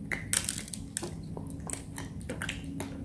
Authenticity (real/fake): real